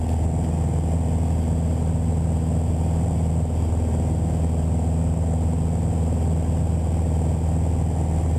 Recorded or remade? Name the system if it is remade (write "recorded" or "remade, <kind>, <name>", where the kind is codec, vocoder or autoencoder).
recorded